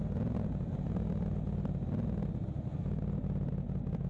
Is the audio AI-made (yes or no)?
no